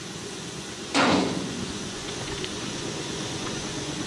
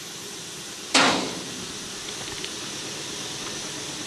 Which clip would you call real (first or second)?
second